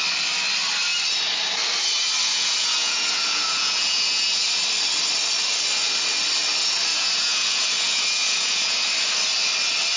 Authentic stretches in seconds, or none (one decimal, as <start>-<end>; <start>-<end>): 0.0-2.2; 4.5-6.9; 8.9-10.0